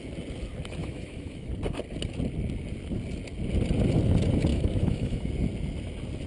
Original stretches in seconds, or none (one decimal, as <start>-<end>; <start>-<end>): 0.0-0.8; 1.5-4.5; 5.3-6.3